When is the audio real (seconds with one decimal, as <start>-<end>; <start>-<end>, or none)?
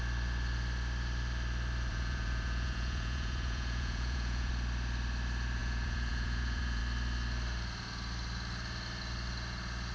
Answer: 0.0-1.9; 4.5-5.6; 6.8-9.9